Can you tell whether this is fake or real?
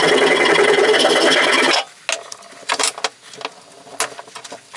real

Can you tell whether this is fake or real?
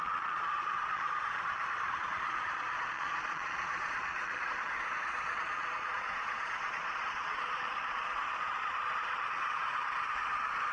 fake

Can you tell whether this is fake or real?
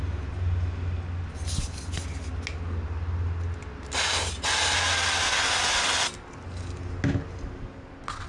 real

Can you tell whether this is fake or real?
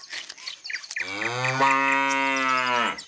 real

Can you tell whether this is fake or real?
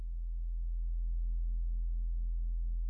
real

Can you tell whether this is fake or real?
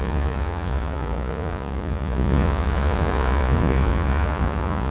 fake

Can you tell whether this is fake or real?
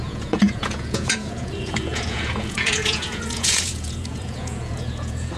fake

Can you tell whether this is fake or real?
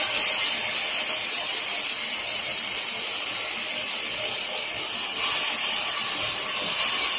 real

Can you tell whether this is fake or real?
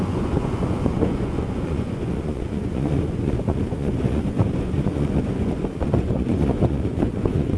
fake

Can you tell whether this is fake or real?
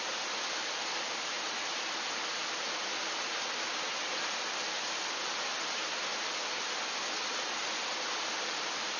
real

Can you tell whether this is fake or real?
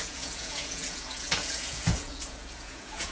fake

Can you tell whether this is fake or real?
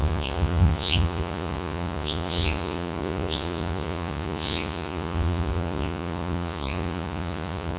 fake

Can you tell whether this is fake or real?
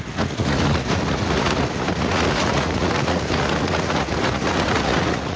fake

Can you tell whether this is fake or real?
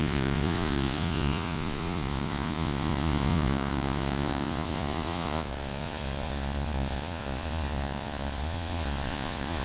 fake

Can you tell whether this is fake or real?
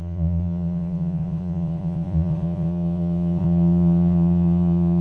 fake